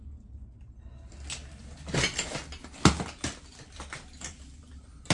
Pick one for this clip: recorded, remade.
recorded